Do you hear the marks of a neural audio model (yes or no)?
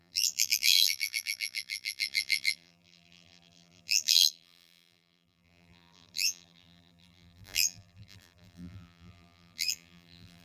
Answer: yes